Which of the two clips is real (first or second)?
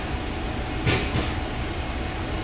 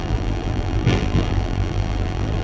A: first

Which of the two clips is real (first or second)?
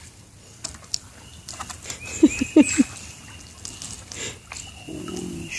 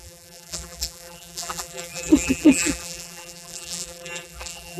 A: first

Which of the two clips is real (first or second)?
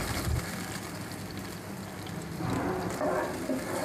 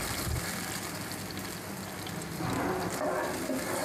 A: second